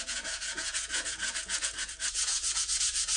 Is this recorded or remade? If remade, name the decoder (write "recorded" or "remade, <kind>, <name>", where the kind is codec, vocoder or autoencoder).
remade, vocoder, Vocos